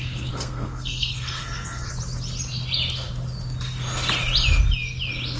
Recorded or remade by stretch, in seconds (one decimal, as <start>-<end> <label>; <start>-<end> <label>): 0.0-1.9 remade; 1.9-5.4 recorded